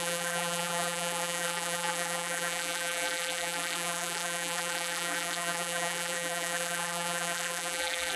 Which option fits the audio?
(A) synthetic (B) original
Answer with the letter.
A